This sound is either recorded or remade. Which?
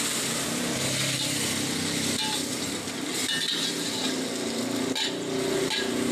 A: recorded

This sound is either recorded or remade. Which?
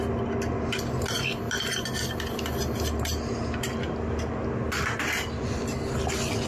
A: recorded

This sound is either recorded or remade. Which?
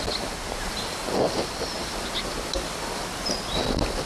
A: recorded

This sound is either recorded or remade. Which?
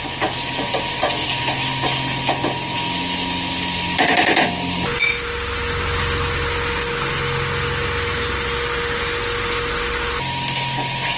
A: recorded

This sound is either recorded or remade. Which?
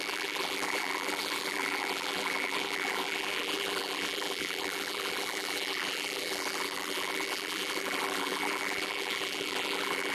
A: remade